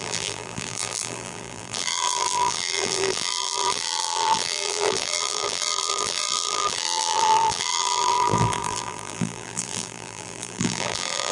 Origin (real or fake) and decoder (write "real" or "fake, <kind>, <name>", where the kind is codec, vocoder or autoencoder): fake, vocoder, BigVGAN v2